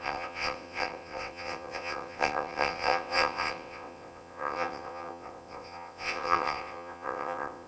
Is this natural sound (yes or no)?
no